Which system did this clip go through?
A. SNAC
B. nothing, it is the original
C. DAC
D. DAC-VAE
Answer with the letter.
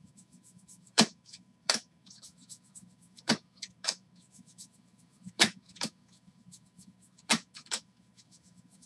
D